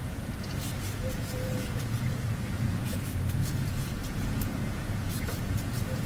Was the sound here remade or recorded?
remade